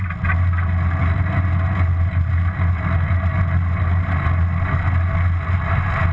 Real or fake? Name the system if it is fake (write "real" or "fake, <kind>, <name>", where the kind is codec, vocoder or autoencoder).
real